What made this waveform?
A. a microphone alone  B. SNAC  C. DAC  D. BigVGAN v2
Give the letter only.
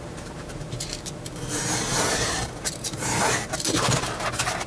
D